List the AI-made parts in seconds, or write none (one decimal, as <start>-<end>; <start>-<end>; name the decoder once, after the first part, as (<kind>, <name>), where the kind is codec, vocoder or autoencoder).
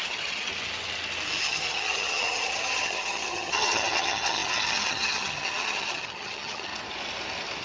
0.0-0.5 (vocoder, HiFi-GAN); 1.4-6.7